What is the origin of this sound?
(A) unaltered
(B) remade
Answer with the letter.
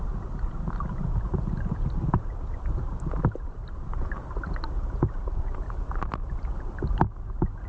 A